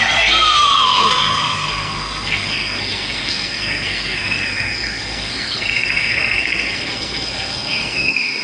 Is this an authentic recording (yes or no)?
no